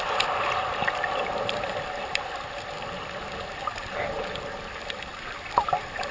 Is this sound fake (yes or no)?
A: no